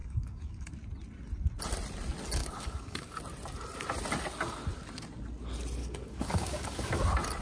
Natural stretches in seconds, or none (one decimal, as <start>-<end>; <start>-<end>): 0.7-2.4; 3.2-5.8; 7.0-7.4